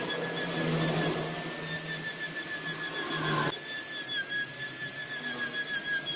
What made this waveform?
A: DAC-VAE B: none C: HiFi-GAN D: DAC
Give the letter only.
B